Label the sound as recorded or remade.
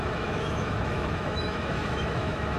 remade